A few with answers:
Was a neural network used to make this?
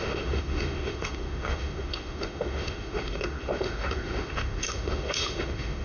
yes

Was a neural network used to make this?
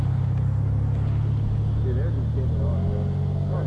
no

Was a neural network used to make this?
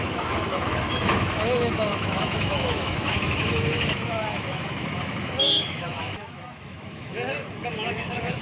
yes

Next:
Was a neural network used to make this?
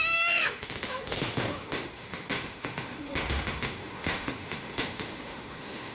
yes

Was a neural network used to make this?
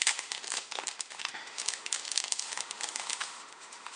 yes